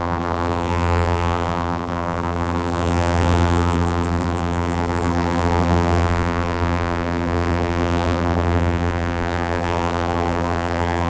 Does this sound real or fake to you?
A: fake